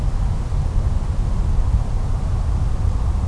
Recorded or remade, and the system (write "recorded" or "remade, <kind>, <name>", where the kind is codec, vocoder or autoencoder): recorded